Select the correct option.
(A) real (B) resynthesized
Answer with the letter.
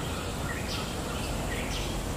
B